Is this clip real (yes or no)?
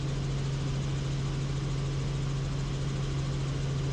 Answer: yes